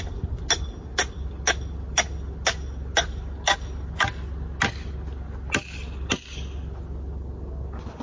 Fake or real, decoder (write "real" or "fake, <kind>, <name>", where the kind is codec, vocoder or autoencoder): real